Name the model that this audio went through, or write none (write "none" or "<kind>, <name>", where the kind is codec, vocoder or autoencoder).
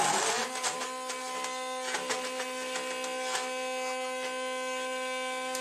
none